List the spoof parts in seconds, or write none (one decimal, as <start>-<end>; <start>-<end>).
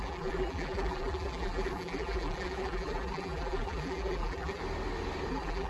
0.0-4.6; 5.3-5.7